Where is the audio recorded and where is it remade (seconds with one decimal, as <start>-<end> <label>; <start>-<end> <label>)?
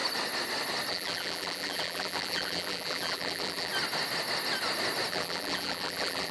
0.0-0.9 recorded; 0.9-3.7 remade; 3.7-5.1 recorded; 5.1-6.3 remade